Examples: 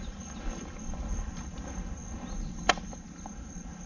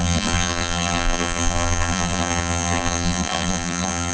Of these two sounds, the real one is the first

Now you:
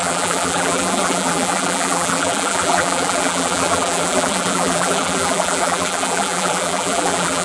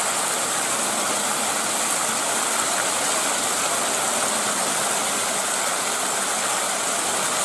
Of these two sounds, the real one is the second